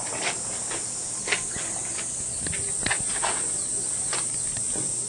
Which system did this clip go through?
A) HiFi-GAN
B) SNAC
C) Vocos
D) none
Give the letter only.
D